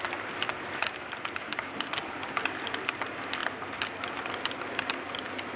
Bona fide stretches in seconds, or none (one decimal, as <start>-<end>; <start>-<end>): 0.0-5.6